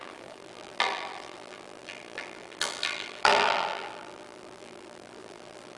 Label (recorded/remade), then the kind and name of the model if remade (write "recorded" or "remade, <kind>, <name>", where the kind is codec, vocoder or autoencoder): remade, vocoder, BigVGAN v2